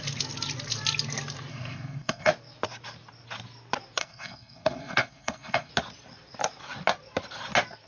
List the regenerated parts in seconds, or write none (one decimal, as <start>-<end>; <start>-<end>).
1.5-2.3; 4.0-5.7